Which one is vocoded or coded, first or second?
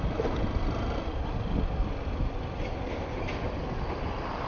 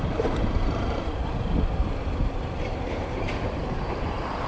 second